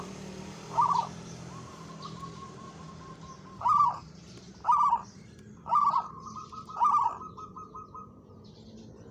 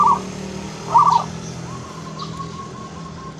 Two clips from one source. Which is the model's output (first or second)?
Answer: first